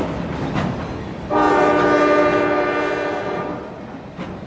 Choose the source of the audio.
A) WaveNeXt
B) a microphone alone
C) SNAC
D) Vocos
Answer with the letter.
B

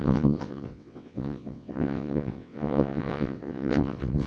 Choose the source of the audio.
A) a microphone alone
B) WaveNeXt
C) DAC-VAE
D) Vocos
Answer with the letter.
B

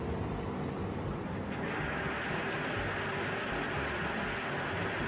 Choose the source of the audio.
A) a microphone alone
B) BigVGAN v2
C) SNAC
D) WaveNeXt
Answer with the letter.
A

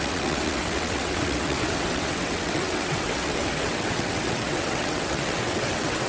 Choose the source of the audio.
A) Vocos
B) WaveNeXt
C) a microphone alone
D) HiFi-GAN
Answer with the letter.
B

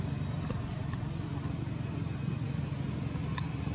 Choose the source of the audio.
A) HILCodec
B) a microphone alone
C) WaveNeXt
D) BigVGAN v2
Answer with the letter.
B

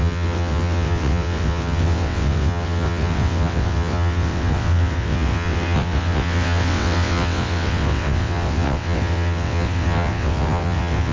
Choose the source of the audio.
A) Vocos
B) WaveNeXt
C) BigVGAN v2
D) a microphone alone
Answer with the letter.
B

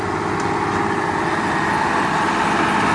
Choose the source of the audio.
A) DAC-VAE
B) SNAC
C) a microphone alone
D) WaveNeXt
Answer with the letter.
C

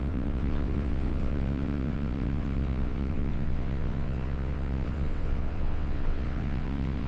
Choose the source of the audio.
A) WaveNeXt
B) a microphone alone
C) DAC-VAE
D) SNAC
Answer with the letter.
A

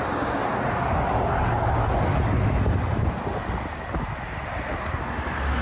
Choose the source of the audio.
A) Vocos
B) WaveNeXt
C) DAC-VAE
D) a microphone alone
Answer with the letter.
D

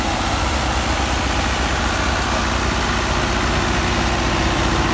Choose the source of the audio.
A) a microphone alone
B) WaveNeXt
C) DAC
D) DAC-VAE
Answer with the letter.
A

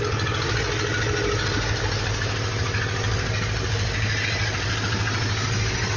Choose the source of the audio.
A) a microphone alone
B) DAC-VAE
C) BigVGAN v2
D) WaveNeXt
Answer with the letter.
A